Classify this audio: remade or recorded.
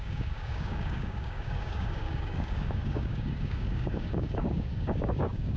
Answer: remade